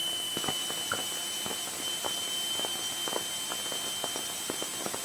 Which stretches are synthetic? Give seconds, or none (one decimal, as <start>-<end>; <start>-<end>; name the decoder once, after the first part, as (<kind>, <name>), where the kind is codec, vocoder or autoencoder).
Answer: none